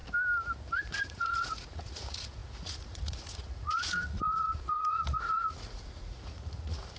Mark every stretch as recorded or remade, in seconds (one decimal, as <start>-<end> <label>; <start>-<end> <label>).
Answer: 0.0-0.8 recorded; 0.8-7.0 remade